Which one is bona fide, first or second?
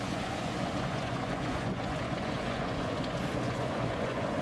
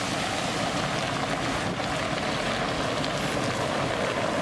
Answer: second